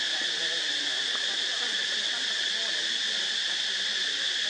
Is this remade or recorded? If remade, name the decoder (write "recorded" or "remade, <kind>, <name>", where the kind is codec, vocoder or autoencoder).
recorded